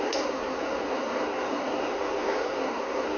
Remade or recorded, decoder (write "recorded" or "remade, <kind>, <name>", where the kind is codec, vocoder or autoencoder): remade, codec, SNAC